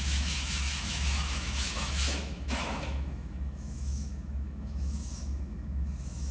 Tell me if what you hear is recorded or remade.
remade